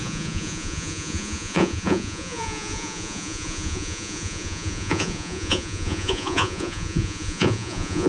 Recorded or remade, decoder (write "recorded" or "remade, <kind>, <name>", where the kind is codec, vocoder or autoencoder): remade, vocoder, Vocos